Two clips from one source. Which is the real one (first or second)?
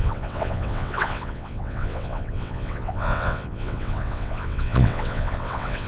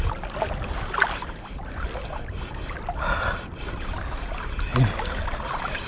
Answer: second